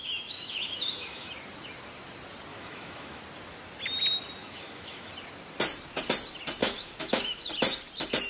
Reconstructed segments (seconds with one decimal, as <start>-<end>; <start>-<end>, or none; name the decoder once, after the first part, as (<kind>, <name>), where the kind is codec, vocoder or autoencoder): 0.0-1.3 (autoencoder, DAC-VAE); 2.5-3.2; 4.4-5.1; 6.6-7.5

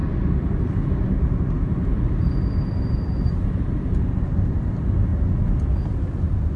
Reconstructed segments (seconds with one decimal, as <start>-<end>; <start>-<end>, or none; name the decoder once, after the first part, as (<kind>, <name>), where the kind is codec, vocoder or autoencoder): 1.1-5.1 (vocoder, BigVGAN v2)

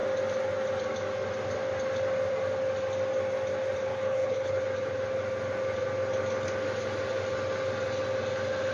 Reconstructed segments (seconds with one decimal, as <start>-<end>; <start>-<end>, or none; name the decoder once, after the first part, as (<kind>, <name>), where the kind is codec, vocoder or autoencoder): 3.9-4.6 (codec, HILCodec)

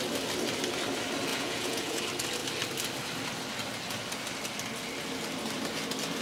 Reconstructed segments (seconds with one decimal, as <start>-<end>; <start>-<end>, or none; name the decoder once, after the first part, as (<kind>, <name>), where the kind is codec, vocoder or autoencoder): 1.3-2.0 (vocoder, Vocos)

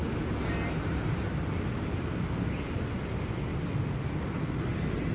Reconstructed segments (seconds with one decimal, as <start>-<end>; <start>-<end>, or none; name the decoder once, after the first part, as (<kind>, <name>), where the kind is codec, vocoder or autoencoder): none

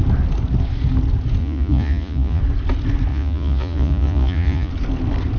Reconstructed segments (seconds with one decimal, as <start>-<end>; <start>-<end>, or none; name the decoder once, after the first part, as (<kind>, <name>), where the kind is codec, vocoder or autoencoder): 1.4-2.4 (vocoder, Vocos); 3.1-4.7

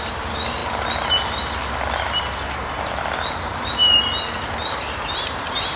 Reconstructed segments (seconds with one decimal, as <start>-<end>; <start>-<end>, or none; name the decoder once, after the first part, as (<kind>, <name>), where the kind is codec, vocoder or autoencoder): none

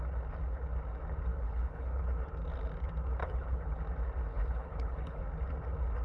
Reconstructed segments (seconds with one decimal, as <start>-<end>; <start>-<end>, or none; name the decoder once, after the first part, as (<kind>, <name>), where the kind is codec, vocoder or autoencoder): 1.3-2.0 (codec, HILCodec); 3.2-3.8; 4.3-5.2